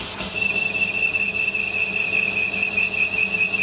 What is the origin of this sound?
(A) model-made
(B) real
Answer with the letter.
B